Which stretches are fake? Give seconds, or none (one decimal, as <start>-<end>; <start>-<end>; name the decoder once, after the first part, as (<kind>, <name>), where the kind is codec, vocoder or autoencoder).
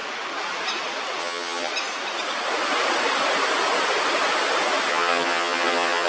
1.2-1.7 (vocoder, HiFi-GAN); 4.9-6.1